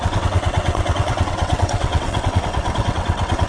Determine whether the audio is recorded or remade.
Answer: remade